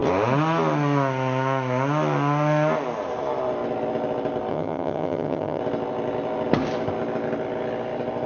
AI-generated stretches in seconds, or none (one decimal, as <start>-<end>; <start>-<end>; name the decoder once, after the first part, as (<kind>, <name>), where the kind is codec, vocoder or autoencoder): 4.5-5.6 (vocoder, HiFi-GAN)